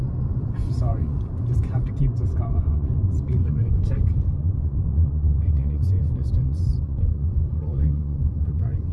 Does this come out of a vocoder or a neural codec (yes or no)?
yes